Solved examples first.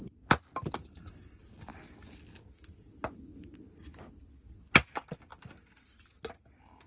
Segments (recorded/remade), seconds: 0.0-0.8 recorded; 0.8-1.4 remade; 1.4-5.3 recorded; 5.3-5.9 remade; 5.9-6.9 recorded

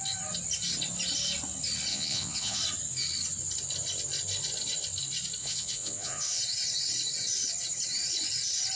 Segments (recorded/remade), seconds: 0.0-1.9 recorded; 1.9-2.6 remade; 2.6-5.4 recorded; 5.4-6.4 remade; 6.4-8.8 recorded